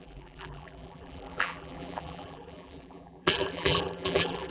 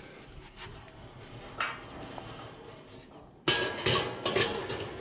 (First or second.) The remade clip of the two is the first